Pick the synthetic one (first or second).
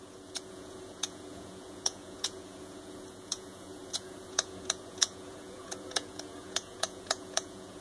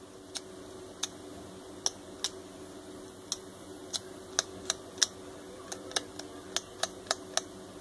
first